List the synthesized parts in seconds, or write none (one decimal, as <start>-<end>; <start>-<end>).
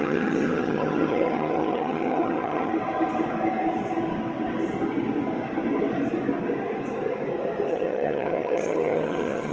0.0-2.7; 7.7-9.5